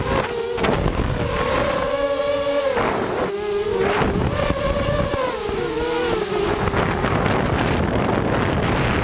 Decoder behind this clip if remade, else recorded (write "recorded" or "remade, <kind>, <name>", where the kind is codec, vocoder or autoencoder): recorded